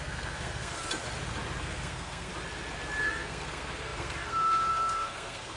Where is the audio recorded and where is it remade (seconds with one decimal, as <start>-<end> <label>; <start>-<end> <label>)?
0.0-0.8 remade; 0.8-1.6 recorded; 1.6-2.3 remade; 2.3-3.0 recorded; 3.0-5.6 remade